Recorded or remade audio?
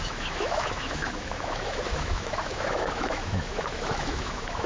remade